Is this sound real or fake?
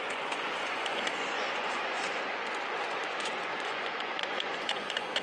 fake